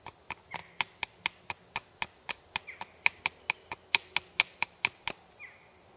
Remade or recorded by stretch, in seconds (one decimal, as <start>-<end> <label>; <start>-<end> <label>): 0.0-6.0 recorded